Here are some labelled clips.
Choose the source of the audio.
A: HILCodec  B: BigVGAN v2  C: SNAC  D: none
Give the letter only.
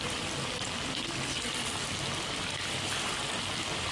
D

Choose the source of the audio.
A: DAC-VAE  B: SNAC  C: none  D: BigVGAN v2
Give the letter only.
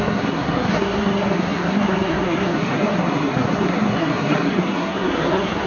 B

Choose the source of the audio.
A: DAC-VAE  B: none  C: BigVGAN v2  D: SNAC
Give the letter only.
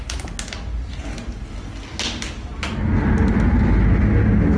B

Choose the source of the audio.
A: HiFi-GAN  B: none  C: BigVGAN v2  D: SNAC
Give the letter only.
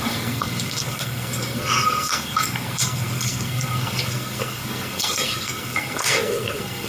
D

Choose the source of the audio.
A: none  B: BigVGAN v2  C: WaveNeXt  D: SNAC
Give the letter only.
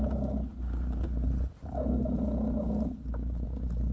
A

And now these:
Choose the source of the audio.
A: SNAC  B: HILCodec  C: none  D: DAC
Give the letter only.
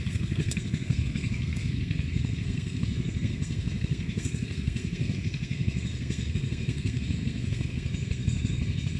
A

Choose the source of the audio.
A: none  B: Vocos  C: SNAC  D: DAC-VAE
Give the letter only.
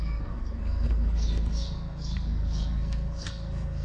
C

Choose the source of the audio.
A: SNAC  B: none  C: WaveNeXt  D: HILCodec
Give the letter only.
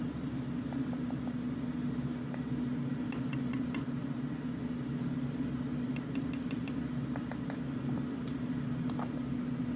B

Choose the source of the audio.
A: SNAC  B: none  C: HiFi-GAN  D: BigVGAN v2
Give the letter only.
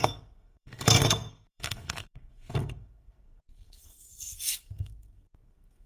A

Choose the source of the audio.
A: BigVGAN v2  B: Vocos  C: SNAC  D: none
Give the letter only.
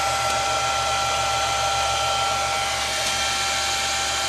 D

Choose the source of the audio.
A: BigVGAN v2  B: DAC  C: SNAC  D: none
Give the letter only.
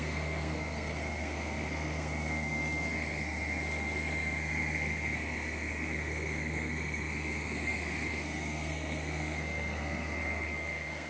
C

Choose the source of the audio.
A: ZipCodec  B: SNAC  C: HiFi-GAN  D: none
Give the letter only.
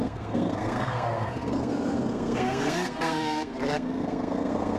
B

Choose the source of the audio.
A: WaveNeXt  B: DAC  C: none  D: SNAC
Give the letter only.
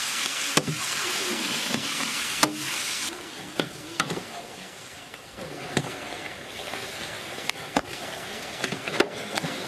D